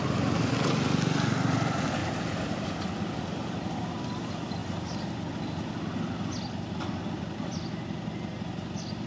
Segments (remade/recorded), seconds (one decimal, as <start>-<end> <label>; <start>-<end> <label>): 0.0-9.1 recorded